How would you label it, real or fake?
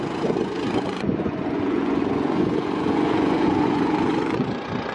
fake